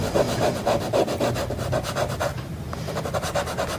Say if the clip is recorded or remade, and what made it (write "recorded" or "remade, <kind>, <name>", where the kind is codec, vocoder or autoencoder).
recorded